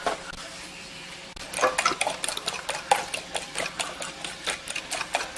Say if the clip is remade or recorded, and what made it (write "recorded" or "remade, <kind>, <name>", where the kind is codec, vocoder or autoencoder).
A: recorded